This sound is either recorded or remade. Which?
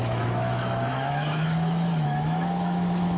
remade